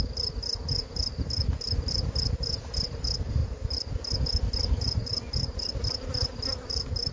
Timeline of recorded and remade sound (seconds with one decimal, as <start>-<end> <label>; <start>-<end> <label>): 0.0-7.1 recorded